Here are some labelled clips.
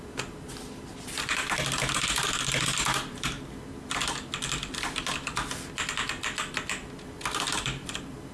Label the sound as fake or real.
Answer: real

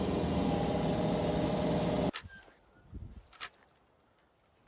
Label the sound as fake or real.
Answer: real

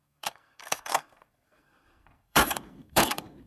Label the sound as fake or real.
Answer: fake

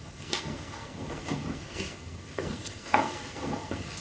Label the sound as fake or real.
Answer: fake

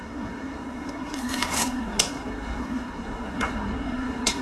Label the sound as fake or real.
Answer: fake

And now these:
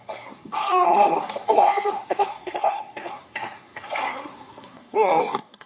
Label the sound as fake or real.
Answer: fake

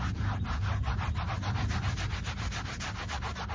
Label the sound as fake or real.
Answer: real